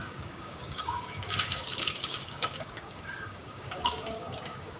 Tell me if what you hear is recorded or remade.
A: remade